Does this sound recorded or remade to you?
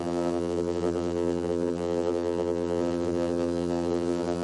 remade